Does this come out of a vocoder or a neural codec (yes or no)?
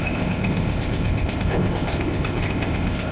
yes